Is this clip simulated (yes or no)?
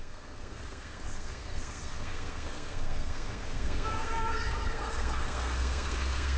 yes